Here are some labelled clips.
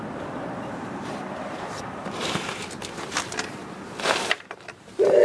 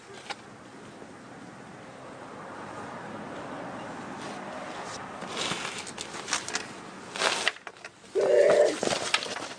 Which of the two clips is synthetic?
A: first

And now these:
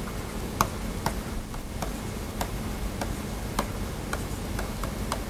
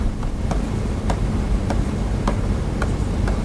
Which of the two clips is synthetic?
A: second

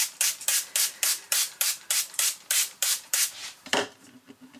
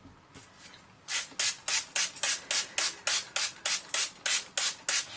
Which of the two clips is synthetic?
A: first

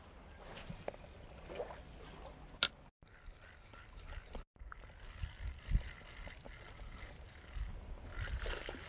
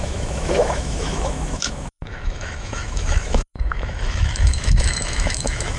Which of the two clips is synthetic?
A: second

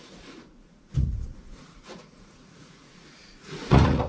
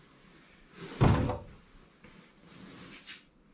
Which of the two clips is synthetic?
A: first